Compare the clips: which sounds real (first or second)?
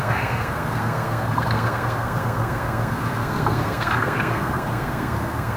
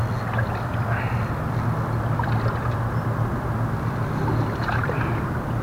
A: second